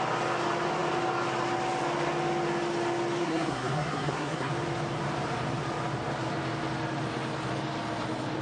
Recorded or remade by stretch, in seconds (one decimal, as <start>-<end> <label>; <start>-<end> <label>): 0.0-3.2 recorded; 3.2-4.5 remade; 4.5-8.4 recorded

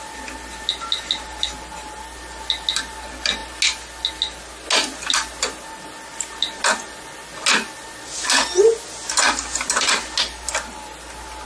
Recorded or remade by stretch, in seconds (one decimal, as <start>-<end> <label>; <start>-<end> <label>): 0.0-11.5 recorded

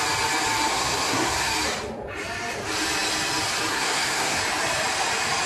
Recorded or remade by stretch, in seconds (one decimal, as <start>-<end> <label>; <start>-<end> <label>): 0.0-0.7 recorded; 0.7-1.5 remade; 1.5-3.7 recorded; 3.7-4.4 remade; 4.4-5.5 recorded

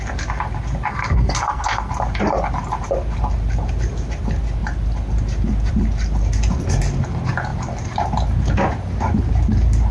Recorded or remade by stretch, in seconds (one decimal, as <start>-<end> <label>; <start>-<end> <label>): 0.0-0.9 recorded; 0.9-1.9 remade; 1.9-9.9 recorded

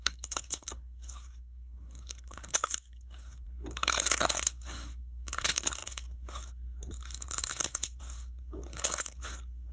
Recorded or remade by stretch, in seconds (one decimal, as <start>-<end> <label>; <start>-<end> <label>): 0.0-9.7 remade

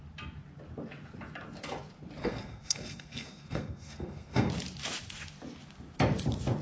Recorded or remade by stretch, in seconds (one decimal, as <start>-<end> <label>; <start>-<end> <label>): 0.0-2.2 recorded; 2.2-4.5 remade; 4.5-6.6 recorded

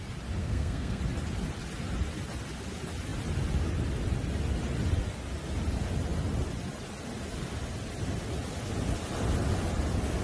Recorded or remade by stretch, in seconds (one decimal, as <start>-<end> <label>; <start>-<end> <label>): 0.0-0.4 recorded; 0.4-1.0 remade; 1.0-10.2 recorded

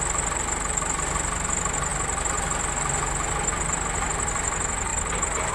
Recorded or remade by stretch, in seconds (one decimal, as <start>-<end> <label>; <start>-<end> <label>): 0.0-5.5 recorded